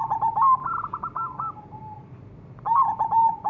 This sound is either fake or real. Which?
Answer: real